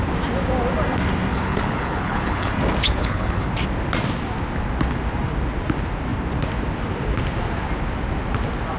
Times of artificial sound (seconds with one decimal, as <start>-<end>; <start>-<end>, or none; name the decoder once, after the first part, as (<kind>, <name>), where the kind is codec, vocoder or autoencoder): 1.3-2.5 (codec, HILCodec); 3.0-3.5